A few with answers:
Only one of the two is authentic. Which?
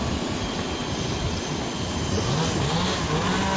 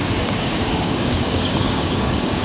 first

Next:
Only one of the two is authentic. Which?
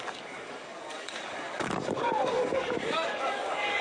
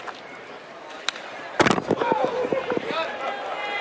second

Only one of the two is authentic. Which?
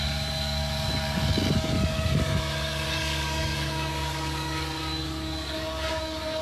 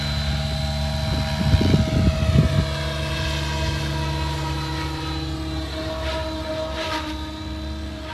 second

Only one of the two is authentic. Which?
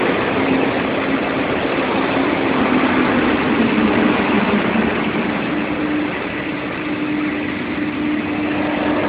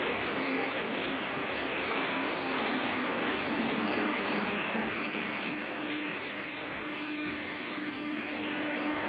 first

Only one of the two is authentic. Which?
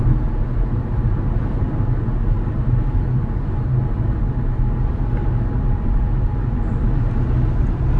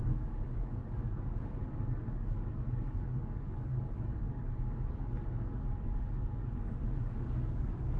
first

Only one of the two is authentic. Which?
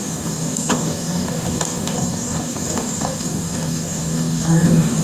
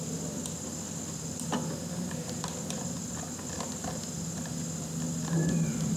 second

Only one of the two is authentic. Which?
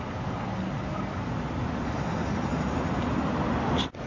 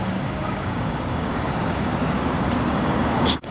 first